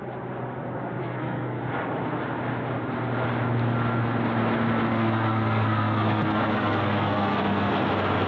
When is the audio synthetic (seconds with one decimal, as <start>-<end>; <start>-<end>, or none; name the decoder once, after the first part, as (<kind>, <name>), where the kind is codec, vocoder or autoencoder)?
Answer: 1.0-1.6 (codec, SNAC); 4.9-7.7